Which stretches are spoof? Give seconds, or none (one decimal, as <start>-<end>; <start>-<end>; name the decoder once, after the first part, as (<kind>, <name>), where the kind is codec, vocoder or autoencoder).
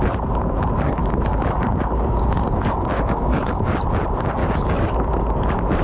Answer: 1.0-3.7 (codec, DAC); 4.4-4.9